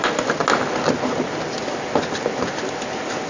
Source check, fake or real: real